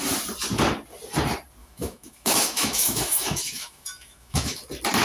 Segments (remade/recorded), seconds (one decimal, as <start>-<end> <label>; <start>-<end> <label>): 0.0-1.6 recorded; 1.6-4.6 remade; 4.6-5.0 recorded